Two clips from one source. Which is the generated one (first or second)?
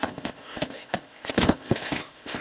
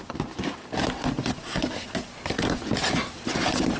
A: first